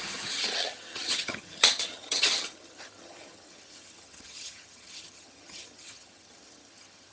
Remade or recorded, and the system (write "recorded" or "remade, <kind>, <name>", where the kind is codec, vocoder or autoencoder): remade, vocoder, HiFi-GAN